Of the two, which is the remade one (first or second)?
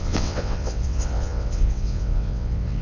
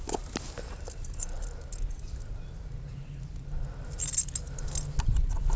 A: first